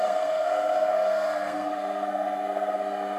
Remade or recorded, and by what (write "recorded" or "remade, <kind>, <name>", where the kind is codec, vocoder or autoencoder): remade, codec, SNAC